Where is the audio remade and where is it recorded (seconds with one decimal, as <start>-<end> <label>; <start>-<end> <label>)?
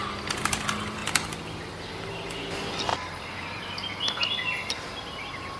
0.0-5.6 recorded